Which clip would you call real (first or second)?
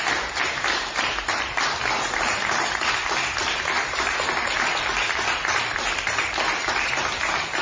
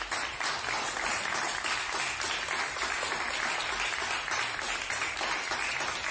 second